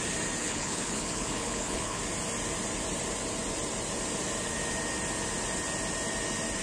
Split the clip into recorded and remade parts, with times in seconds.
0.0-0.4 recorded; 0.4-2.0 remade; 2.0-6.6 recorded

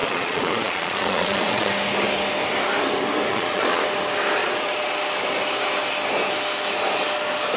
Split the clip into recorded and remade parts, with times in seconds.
0.0-1.7 remade; 1.7-3.3 recorded; 3.3-3.8 remade; 3.8-4.4 recorded; 4.4-4.9 remade; 4.9-7.6 recorded

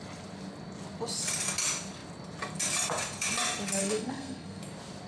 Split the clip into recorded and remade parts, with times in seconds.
0.0-3.8 recorded; 3.8-4.6 remade; 4.6-5.1 recorded

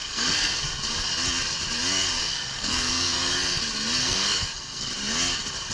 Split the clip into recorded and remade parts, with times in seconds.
0.0-0.6 remade; 0.6-2.2 recorded; 2.2-3.6 remade; 3.6-4.0 recorded; 4.0-4.9 remade; 4.9-5.7 recorded